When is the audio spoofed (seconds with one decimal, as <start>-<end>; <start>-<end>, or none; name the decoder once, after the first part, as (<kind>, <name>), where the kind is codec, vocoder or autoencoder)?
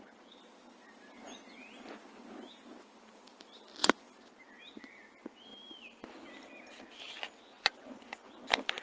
3.8-4.3 (vocoder, Vocos); 7.5-8.3